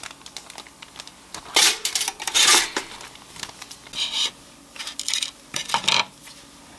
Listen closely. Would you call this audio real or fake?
real